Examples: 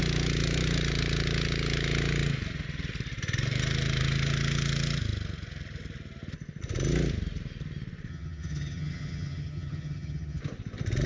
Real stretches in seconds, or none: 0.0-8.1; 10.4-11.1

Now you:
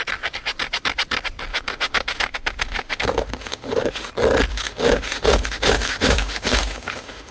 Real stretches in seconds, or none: 0.0-1.5; 4.1-4.5